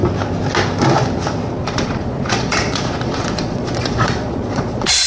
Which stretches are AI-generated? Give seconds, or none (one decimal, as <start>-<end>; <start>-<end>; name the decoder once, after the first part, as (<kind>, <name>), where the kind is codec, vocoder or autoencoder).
1.6-5.1 (vocoder, Vocos)